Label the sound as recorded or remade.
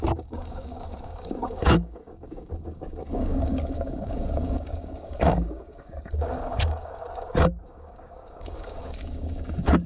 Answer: remade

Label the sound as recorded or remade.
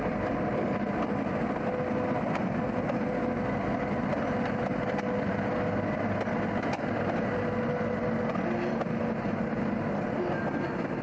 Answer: recorded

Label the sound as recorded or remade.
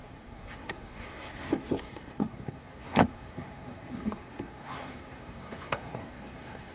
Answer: remade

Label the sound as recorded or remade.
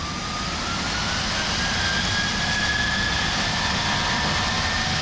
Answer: recorded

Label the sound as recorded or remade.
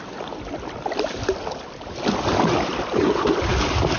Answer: recorded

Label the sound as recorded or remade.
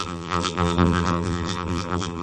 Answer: remade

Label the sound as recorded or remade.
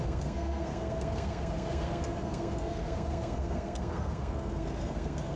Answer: remade